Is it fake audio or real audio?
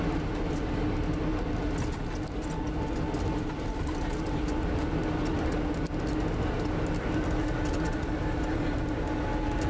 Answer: real